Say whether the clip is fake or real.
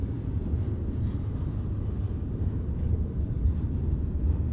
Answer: real